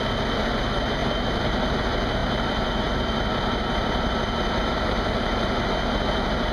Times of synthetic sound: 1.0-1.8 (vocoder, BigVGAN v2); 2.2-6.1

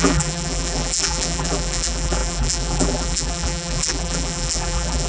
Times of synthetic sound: 0.0-5.1 (vocoder, BigVGAN v2)

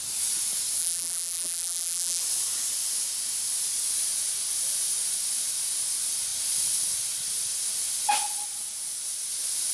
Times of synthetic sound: 0.8-2.2 (vocoder, BigVGAN v2)

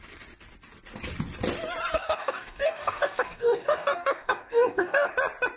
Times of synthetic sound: 1.9-5.1 (codec, DAC)

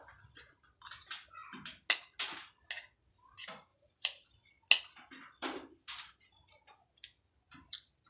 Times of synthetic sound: 3.7-4.5 (vocoder, BigVGAN v2)